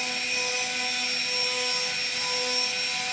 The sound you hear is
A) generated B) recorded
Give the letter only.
B